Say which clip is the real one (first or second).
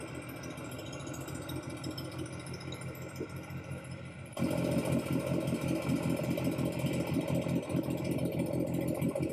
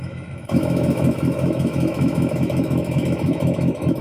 first